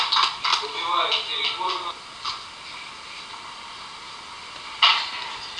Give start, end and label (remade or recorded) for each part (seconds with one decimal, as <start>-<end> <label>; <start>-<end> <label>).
0.0-5.6 recorded